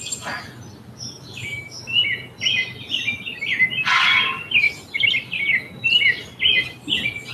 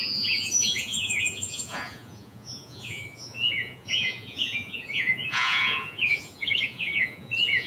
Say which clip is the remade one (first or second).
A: second